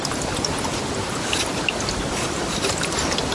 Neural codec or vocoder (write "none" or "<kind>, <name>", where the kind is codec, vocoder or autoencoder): none